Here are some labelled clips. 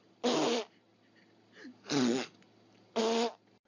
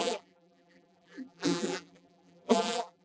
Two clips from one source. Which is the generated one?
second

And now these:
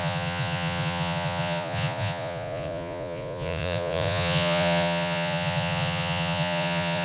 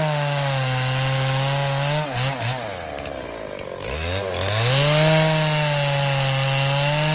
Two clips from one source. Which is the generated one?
first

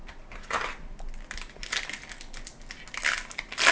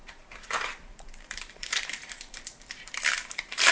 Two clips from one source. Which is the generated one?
second